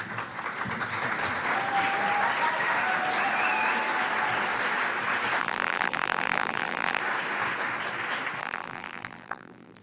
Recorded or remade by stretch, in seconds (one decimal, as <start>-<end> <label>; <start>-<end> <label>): 0.0-5.4 recorded; 5.4-7.0 remade; 7.0-8.4 recorded; 8.4-9.8 remade